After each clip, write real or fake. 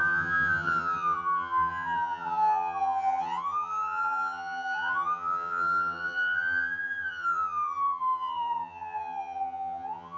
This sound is fake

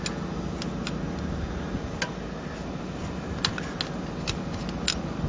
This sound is real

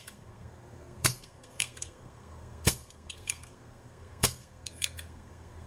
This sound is fake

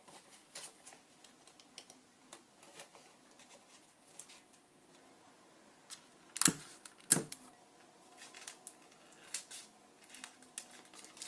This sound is real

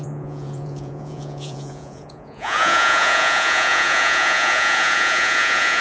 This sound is fake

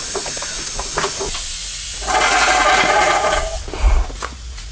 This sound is fake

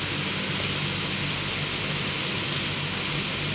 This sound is real